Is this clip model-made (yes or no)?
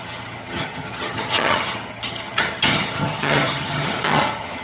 yes